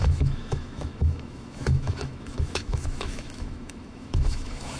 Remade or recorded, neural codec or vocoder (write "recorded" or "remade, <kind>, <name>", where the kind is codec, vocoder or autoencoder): remade, autoencoder, DAC-VAE